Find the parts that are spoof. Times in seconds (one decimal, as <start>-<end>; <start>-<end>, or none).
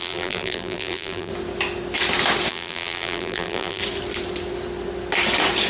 0.0-1.3; 2.5-3.8